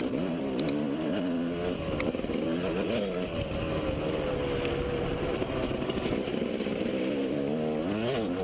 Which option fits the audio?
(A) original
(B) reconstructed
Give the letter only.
A